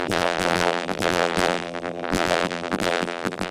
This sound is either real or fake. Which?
fake